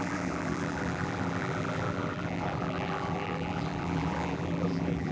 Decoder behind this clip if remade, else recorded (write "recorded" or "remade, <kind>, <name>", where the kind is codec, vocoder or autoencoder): remade, vocoder, BigVGAN v2